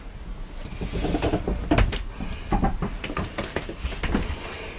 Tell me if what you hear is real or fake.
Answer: real